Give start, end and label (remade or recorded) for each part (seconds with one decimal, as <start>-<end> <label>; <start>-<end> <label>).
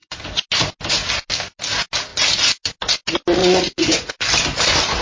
0.0-3.4 recorded; 3.4-4.3 remade; 4.3-5.0 recorded